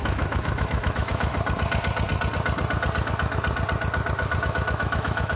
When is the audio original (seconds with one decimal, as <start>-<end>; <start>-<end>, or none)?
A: 1.3-4.4